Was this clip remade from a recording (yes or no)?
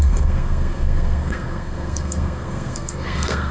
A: yes